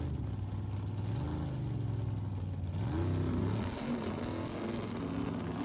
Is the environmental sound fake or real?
real